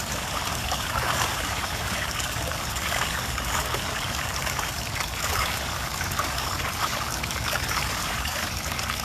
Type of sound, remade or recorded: remade